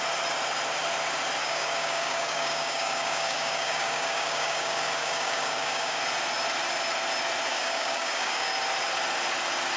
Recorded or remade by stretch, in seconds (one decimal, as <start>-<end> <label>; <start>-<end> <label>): 0.0-1.4 recorded; 1.4-6.0 remade; 6.0-7.5 recorded; 7.5-8.5 remade; 8.5-9.8 recorded